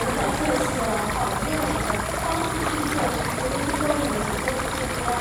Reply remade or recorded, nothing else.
recorded